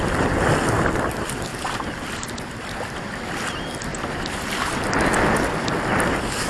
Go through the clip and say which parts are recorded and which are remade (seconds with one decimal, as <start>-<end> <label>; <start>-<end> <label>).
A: 0.0-1.5 recorded; 1.5-3.0 remade; 3.0-3.9 recorded; 3.9-5.0 remade; 5.0-6.5 recorded